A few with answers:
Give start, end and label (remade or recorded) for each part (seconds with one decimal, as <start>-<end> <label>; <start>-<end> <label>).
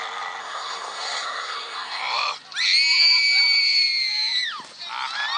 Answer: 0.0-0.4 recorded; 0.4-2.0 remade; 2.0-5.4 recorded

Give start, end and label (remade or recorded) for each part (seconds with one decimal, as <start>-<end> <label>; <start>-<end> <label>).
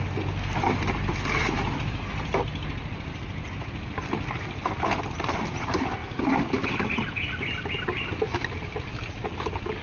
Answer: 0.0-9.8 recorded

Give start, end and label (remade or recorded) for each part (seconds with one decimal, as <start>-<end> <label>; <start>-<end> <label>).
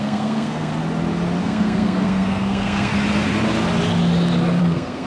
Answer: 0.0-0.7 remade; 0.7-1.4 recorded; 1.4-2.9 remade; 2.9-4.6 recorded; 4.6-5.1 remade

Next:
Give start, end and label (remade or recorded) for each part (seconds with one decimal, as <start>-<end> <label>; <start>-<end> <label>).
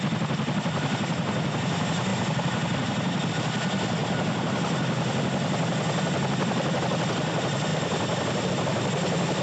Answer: 0.0-2.1 recorded; 2.1-3.3 remade; 3.3-7.7 recorded; 7.7-8.5 remade; 8.5-9.4 recorded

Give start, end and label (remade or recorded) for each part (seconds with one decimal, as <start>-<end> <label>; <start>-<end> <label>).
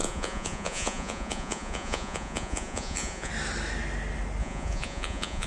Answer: 0.0-3.3 remade; 3.3-4.4 recorded; 4.4-5.5 remade